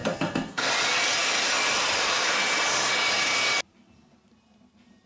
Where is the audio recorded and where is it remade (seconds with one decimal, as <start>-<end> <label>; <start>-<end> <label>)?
0.0-0.7 remade; 0.7-5.1 recorded

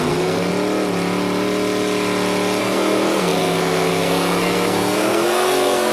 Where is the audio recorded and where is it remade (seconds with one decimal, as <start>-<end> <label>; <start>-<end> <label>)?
0.0-0.5 remade; 0.5-2.6 recorded; 2.6-5.9 remade

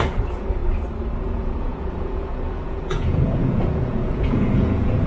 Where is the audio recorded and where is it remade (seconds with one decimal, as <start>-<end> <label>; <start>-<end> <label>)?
0.0-0.6 remade; 0.6-1.2 recorded; 1.2-5.1 remade

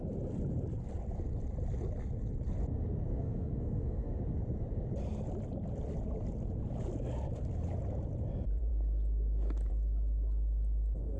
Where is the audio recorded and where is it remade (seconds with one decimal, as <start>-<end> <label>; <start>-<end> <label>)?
0.0-3.1 recorded; 3.1-4.2 remade; 4.2-11.2 recorded